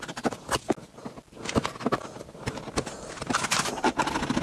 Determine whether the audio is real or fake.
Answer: real